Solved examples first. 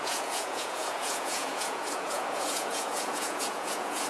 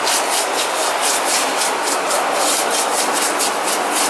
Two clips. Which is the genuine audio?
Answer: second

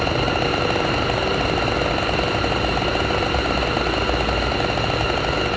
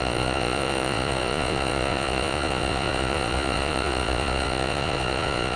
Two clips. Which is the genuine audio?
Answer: first